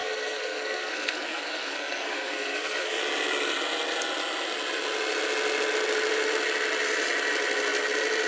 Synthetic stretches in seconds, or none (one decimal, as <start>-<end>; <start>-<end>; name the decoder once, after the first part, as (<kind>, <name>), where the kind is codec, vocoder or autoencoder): 0.0-3.0 (codec, SNAC)